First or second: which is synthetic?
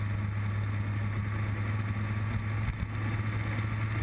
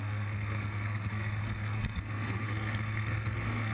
second